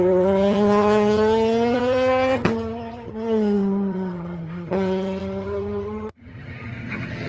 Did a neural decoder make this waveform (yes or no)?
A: yes